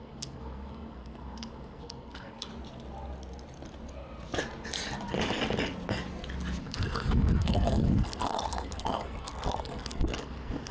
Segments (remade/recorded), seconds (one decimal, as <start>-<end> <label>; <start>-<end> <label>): 0.0-2.5 remade; 2.5-6.6 recorded; 6.6-10.7 remade

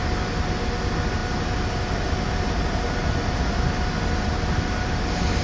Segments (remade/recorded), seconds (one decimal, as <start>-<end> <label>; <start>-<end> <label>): 0.0-5.4 recorded

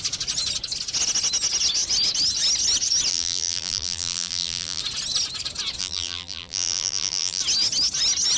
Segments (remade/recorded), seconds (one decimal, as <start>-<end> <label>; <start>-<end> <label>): 0.0-3.1 recorded; 3.1-4.8 remade; 4.8-5.8 recorded; 5.8-7.4 remade; 7.4-8.4 recorded

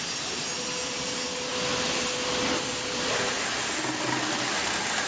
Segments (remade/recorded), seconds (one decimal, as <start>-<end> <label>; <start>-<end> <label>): 0.0-5.1 recorded

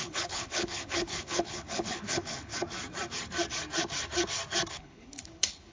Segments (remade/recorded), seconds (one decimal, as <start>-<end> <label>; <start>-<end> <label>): 0.0-2.5 remade; 2.5-4.7 recorded; 4.7-5.7 remade